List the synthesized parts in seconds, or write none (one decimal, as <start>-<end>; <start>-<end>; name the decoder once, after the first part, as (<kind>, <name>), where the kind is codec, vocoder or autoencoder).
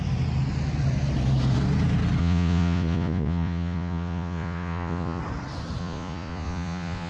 2.2-5.2 (vocoder, Vocos); 5.8-7.1